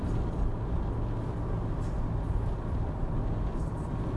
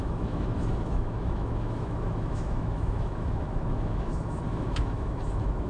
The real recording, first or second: first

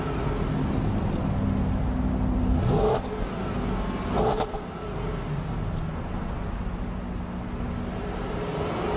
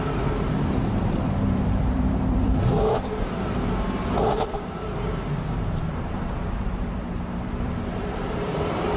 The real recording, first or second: first